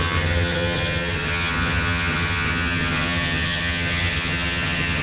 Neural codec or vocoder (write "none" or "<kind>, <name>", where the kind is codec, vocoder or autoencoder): vocoder, HiFi-GAN